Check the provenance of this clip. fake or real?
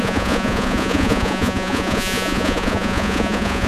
fake